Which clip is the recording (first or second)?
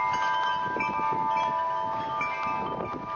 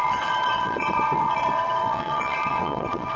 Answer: first